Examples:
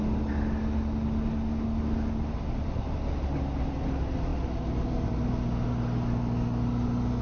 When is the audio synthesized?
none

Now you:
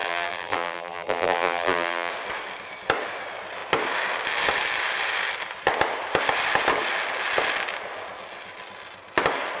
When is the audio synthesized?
0.0-2.1 (vocoder, BigVGAN v2)

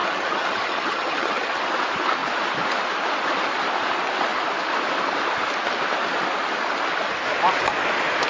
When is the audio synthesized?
0.0-1.6 (vocoder, HiFi-GAN)

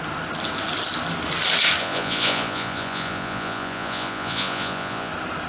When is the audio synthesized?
1.8-5.1 (vocoder, Vocos)